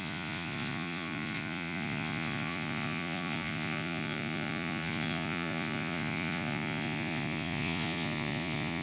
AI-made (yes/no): yes